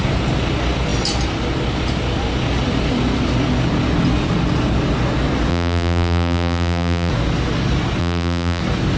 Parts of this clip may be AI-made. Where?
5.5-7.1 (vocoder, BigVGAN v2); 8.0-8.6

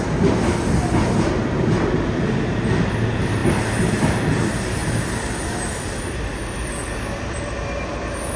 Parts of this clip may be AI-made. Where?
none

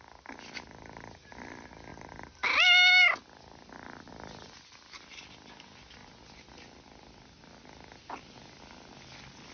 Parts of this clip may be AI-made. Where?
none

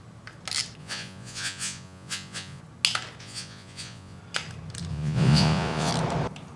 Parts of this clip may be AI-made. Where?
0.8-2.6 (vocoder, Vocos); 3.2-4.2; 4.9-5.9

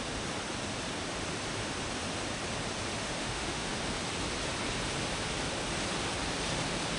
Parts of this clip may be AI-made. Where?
3.0-3.8 (autoencoder, DAC-VAE)